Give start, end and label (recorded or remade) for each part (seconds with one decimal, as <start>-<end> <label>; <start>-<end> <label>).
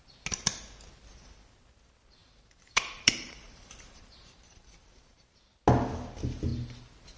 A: 0.0-2.2 recorded; 2.2-5.4 remade; 5.4-7.2 recorded